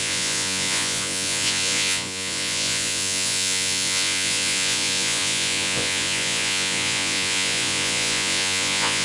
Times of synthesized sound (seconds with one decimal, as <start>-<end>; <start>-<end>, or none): 0.0-9.0